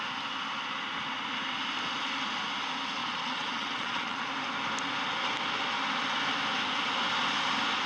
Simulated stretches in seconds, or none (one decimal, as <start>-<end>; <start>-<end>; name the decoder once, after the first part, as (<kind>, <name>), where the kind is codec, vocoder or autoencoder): 3.0-4.3 (vocoder, Vocos)